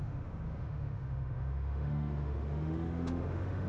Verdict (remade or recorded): remade